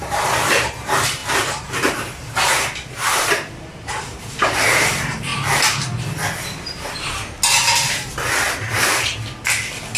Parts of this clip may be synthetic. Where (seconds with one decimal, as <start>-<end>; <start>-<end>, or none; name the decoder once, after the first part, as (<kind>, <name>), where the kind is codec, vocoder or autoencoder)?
0.0-5.3 (vocoder, BigVGAN v2); 6.6-7.4